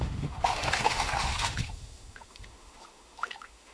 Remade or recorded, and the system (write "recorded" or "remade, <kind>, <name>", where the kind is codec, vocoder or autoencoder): remade, autoencoder, DAC-VAE